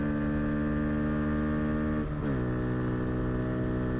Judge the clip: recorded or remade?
recorded